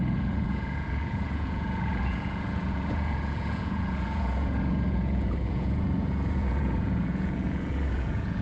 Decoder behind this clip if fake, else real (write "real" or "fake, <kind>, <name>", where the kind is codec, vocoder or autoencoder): fake, vocoder, Vocos